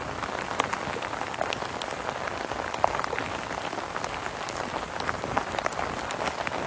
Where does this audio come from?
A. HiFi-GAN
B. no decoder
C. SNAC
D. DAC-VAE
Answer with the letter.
B